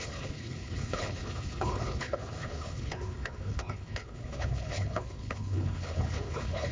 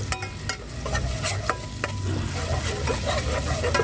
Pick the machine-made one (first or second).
first